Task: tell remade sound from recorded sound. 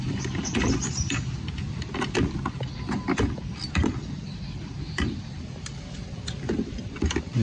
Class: remade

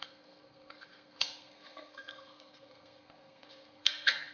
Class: remade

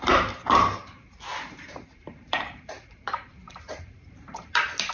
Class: remade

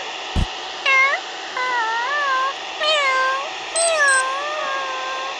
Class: recorded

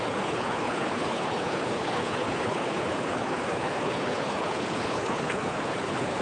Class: remade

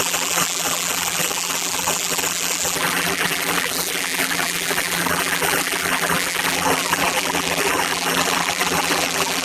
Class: remade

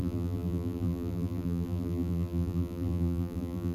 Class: remade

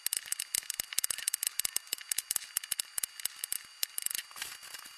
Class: recorded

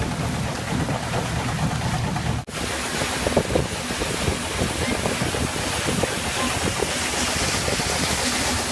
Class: recorded